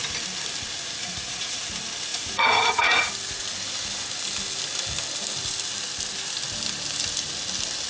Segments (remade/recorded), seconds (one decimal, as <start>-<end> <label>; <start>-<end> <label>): 0.0-1.0 recorded; 1.0-1.6 remade; 1.6-2.1 recorded; 2.1-3.1 remade; 3.1-7.9 recorded